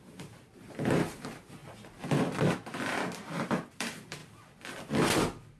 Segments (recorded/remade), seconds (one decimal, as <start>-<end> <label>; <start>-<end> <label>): 0.0-1.6 remade; 1.6-3.2 recorded; 3.2-4.2 remade; 4.2-5.6 recorded